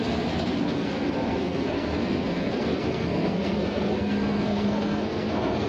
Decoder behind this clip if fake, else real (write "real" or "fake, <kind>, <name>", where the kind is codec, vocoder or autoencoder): fake, codec, SNAC